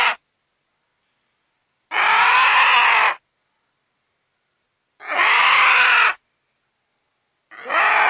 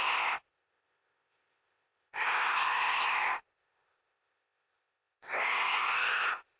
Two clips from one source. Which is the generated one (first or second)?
second